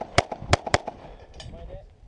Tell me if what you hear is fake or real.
fake